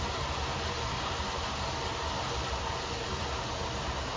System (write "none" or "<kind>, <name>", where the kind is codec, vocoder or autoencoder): none